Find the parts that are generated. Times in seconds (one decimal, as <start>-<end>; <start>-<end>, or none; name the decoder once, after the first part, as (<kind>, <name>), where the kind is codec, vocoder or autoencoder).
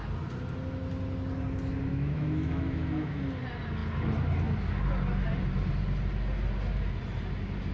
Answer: 1.9-3.2 (autoencoder, DAC-VAE)